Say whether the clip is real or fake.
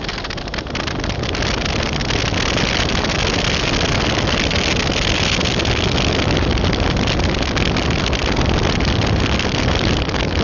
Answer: real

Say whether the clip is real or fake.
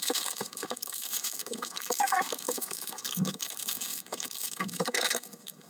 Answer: fake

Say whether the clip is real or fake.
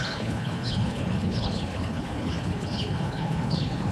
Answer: fake